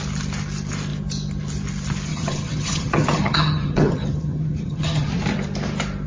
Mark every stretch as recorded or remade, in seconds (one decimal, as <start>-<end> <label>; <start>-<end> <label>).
0.0-2.1 recorded; 2.1-5.1 remade; 5.1-6.1 recorded